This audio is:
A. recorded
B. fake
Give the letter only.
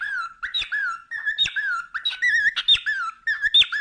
A